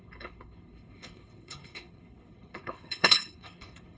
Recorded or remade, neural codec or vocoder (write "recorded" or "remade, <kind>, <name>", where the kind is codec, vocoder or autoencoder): remade, codec, HILCodec